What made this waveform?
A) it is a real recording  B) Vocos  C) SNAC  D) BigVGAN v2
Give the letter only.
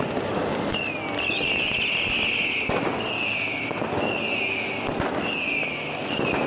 A